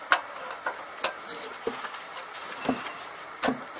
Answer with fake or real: fake